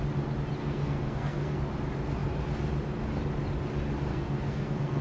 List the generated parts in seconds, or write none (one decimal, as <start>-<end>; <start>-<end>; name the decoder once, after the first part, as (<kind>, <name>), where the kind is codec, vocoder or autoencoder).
0.6-1.6 (codec, SNAC); 4.1-5.0